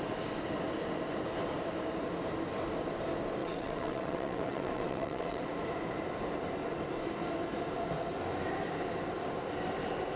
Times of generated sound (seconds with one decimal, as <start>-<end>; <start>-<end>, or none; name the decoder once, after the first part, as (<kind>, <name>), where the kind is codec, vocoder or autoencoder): 3.4-5.4 (vocoder, WaveNeXt)